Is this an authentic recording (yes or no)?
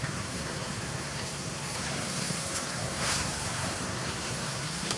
no